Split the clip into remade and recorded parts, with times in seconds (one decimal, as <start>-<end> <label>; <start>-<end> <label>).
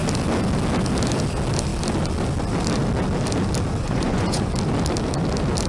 0.0-3.8 recorded; 3.8-4.5 remade; 4.5-5.7 recorded